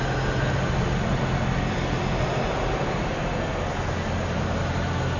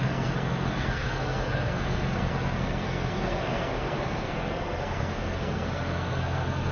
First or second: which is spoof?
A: second